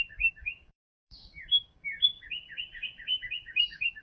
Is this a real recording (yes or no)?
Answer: no